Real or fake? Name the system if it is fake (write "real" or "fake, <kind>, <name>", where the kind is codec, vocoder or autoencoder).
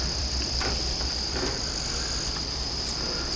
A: fake, vocoder, BigVGAN v2